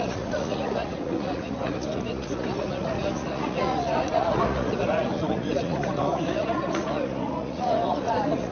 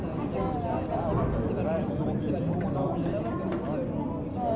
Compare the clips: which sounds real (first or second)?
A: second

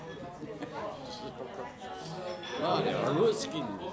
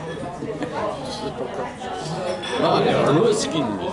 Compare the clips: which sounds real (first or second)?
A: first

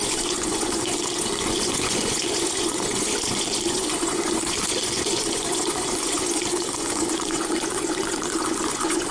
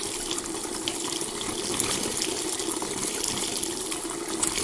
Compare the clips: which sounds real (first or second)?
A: second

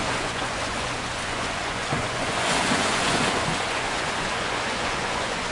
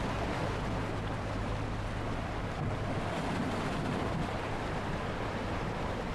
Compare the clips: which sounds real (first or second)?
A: second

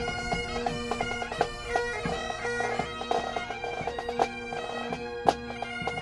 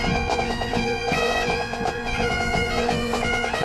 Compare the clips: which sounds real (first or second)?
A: first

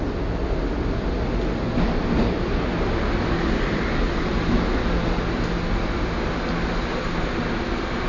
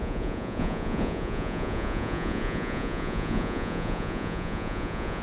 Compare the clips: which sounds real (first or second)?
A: first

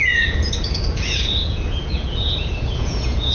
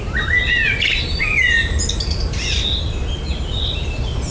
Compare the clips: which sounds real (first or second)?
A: second